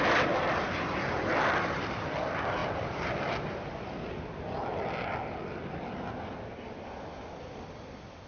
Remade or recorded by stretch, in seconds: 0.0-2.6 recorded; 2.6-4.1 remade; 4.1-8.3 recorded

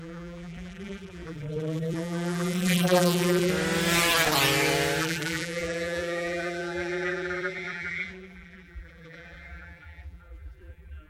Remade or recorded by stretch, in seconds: 0.0-3.5 remade; 3.5-5.0 recorded; 5.0-11.1 remade

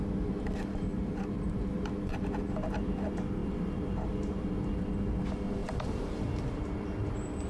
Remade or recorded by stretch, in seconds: 0.0-0.9 recorded; 0.9-1.7 remade; 1.7-3.4 recorded; 3.4-4.7 remade; 4.7-5.6 recorded; 5.6-7.5 remade

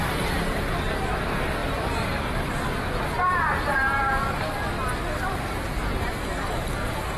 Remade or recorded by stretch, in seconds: 0.0-7.2 recorded

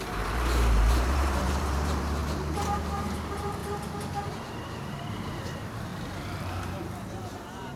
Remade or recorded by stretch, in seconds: 0.0-3.6 remade; 3.6-5.1 recorded; 5.1-7.8 remade

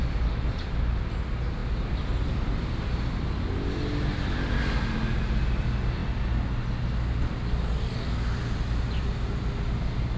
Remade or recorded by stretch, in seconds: 0.0-10.2 recorded

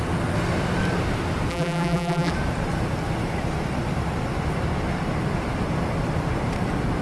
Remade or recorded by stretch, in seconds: 0.0-1.5 recorded; 1.5-2.3 remade; 2.3-7.0 recorded

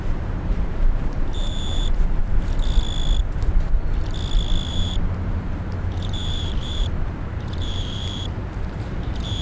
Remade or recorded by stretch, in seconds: 0.0-2.2 remade; 2.2-4.7 recorded; 4.7-9.4 remade